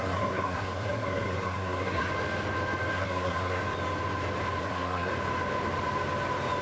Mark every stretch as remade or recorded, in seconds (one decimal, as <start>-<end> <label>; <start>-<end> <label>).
0.0-2.1 remade; 2.1-2.9 recorded; 2.9-3.6 remade; 3.6-4.6 recorded; 4.6-5.1 remade; 5.1-6.6 recorded